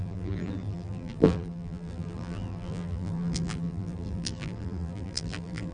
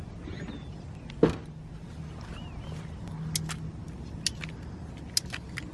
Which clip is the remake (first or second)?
first